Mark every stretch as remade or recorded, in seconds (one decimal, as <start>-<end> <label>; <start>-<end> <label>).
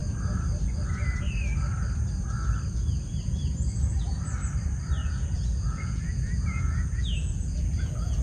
0.0-5.0 recorded; 5.0-8.2 remade